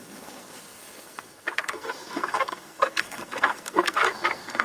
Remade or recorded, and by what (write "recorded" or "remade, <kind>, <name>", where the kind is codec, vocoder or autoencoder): remade, codec, SNAC